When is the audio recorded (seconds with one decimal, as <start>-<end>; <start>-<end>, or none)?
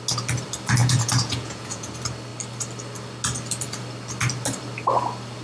0.0-0.8; 1.9-5.4